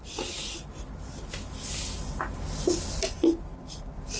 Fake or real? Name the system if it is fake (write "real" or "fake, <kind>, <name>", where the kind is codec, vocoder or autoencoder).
real